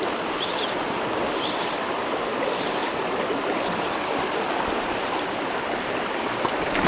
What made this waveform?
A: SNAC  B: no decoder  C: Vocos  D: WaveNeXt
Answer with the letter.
B